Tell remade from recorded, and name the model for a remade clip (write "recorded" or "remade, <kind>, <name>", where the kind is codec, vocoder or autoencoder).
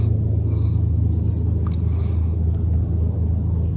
recorded